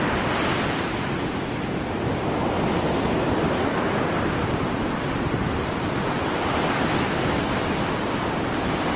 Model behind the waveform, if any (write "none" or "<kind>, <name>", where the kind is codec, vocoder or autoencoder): none